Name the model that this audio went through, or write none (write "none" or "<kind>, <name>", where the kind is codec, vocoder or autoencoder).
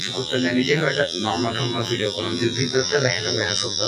vocoder, BigVGAN v2